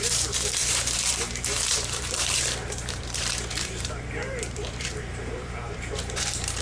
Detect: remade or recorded remade